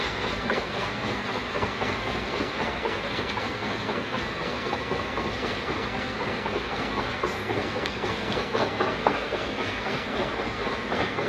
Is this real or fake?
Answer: fake